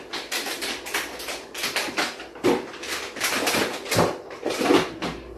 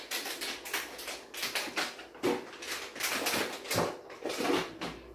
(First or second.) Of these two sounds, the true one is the second